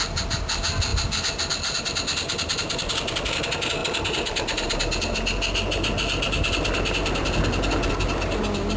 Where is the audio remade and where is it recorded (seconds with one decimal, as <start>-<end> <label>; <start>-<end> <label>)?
0.0-8.8 recorded